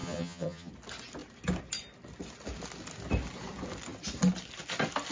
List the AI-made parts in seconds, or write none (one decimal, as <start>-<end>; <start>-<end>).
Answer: 0.0-0.7